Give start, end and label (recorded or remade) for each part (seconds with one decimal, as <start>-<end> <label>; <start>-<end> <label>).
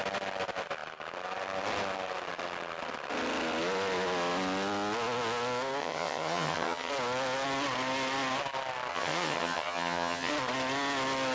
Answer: 0.0-5.8 recorded; 5.8-6.9 remade; 6.9-8.9 recorded; 8.9-10.3 remade; 10.3-11.3 recorded